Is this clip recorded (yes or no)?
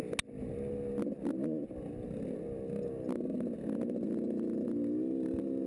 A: yes